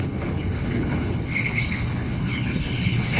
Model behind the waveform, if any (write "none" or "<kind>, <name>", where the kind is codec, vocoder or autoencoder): codec, HILCodec